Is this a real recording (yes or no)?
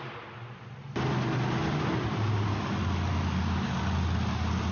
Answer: yes